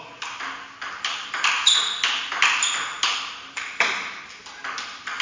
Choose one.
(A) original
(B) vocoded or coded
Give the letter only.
A